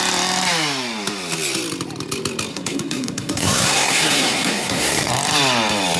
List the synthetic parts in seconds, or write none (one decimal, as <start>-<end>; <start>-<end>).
2.5-5.1